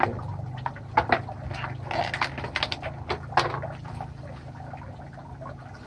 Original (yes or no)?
yes